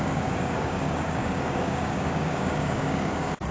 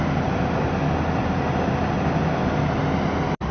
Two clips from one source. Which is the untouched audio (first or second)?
second